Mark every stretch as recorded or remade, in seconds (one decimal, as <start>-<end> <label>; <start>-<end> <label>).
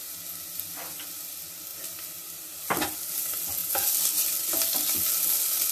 0.0-5.7 recorded